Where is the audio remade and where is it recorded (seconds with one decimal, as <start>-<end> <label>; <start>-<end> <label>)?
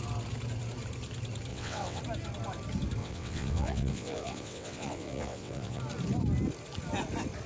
0.0-1.5 recorded; 1.5-2.0 remade; 2.0-3.0 recorded; 3.0-5.8 remade; 5.8-7.5 recorded